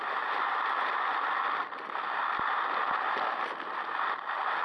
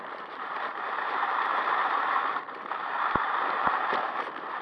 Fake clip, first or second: second